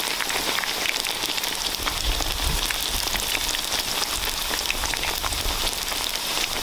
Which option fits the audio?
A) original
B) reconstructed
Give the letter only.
B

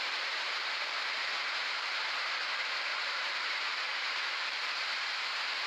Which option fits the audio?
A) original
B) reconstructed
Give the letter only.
B